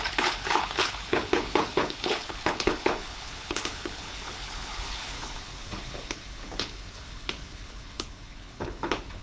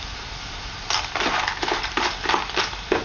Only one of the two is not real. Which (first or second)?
first